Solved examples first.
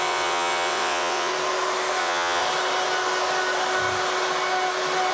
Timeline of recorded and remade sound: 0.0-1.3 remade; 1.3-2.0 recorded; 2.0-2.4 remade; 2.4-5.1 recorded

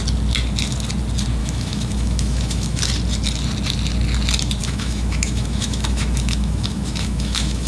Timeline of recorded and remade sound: 0.0-1.4 recorded; 1.4-2.8 remade; 2.8-4.6 recorded; 4.6-7.7 remade

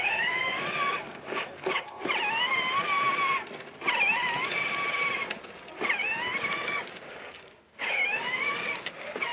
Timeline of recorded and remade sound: 0.0-2.0 remade; 2.0-6.4 recorded; 6.4-9.3 remade

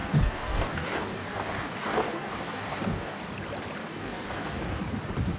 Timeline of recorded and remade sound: 0.0-3.2 remade; 3.2-3.8 recorded; 3.8-4.8 remade; 4.8-5.4 recorded

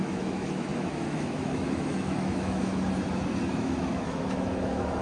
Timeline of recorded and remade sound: 0.0-2.7 remade; 2.7-3.5 recorded; 3.5-5.0 remade

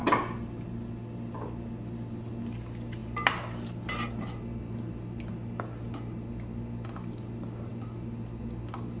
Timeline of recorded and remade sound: 0.0-9.0 recorded

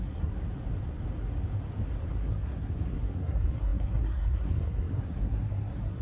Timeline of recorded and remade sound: 0.0-0.4 remade; 0.4-2.1 recorded; 2.1-6.0 remade

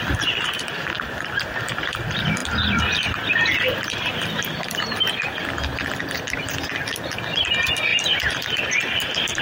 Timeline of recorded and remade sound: 0.0-2.4 recorded; 2.4-5.4 remade; 5.4-9.4 recorded